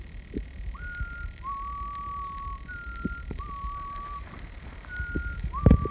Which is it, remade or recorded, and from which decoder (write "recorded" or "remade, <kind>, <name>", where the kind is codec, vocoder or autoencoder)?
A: recorded